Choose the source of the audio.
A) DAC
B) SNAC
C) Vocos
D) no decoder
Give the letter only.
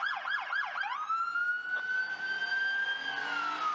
D